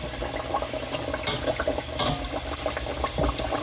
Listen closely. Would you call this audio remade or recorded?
recorded